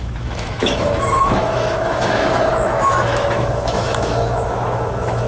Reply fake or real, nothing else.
fake